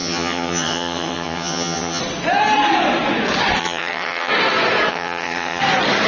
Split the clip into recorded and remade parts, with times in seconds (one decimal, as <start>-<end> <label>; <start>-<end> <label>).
0.0-2.0 remade; 2.0-3.6 recorded; 3.6-4.3 remade; 4.3-4.9 recorded; 4.9-5.6 remade; 5.6-6.1 recorded